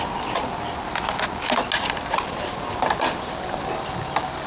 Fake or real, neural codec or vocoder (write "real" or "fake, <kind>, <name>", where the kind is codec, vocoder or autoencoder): real